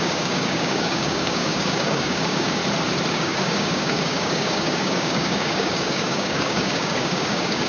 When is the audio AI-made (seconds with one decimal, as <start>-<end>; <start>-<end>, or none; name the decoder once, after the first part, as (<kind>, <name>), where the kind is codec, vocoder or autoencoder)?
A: 0.0-2.6 (codec, DAC); 3.1-7.7